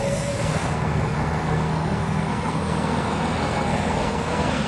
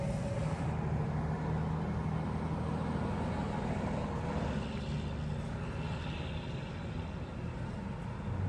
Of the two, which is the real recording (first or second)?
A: second